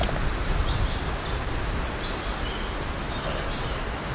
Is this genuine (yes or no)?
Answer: yes